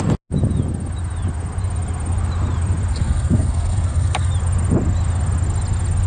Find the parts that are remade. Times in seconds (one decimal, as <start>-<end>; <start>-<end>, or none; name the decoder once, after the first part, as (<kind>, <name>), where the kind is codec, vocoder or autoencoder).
2.9-4.3 (codec, SNAC)

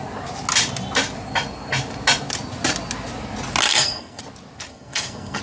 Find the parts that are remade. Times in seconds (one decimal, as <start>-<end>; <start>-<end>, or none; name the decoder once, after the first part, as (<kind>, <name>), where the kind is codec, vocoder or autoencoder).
3.7-4.2 (codec, SNAC); 4.7-5.4

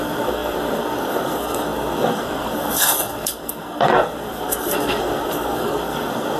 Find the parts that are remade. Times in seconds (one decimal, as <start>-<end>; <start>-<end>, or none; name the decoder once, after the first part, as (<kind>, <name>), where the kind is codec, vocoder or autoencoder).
0.0-6.4 (codec, SNAC)

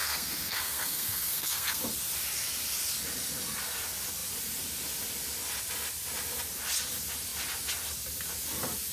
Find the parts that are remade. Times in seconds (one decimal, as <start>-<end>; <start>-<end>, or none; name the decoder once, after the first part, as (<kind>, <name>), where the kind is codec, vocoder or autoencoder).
0.0-1.8 (codec, SNAC)

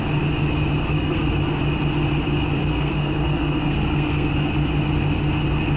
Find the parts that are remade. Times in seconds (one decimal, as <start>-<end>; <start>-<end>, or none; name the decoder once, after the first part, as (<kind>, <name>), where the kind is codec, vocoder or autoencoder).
0.8-1.3 (codec, SNAC); 2.6-4.3